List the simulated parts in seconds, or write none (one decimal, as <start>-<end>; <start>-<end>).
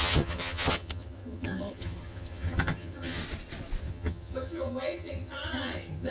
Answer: 0.0-3.2; 3.8-6.1